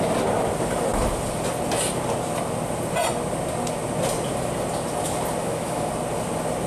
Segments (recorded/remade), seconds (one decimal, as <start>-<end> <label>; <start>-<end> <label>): 0.0-5.4 recorded; 5.4-5.9 remade; 5.9-6.7 recorded